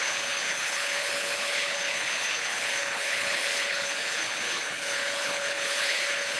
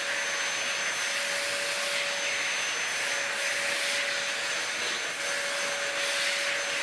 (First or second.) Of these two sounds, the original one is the second